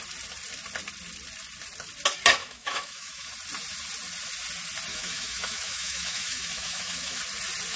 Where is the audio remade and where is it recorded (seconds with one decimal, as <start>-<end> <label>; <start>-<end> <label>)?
0.0-2.4 recorded; 2.4-3.3 remade; 3.3-4.9 recorded; 4.9-7.2 remade; 7.2-7.8 recorded